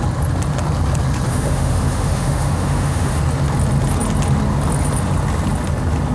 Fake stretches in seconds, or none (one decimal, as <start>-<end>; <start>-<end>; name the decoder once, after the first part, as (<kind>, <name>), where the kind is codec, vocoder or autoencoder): 1.3-3.2 (autoencoder, DAC-VAE)